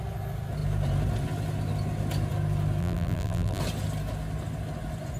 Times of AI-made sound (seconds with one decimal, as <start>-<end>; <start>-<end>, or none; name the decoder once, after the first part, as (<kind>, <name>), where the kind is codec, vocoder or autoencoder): 2.8-3.6 (vocoder, BigVGAN v2)